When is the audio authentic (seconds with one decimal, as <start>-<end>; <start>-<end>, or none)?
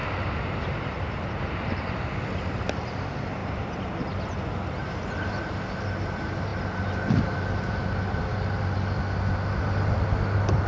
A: 1.2-10.7